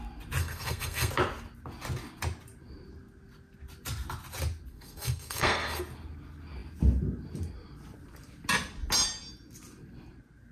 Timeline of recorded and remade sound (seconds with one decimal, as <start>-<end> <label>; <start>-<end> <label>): 0.0-0.4 recorded; 0.4-1.1 remade; 1.1-4.7 recorded; 4.7-5.8 remade; 5.8-10.5 recorded